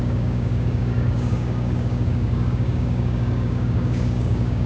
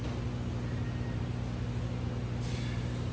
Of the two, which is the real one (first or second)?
second